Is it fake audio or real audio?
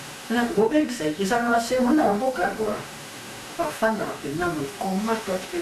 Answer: fake